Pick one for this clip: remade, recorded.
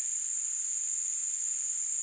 recorded